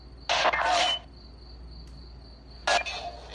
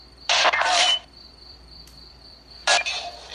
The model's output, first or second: second